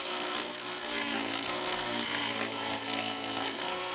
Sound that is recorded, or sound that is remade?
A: remade